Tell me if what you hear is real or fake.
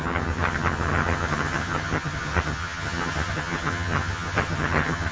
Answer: fake